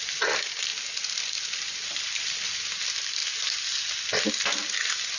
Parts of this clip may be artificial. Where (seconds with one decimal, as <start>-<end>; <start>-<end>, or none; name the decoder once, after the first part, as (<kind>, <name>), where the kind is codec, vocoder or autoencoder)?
0.0-3.2 (vocoder, BigVGAN v2)